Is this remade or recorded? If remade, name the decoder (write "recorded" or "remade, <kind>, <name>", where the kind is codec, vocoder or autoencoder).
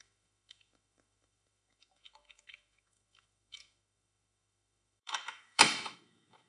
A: remade, autoencoder, DAC-VAE